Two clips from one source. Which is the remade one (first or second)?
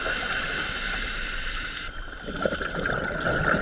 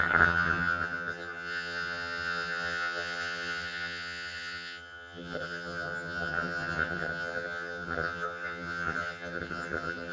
second